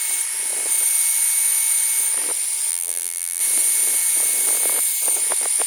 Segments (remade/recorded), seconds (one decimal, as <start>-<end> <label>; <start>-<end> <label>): 0.0-2.7 recorded; 2.7-3.4 remade; 3.4-5.7 recorded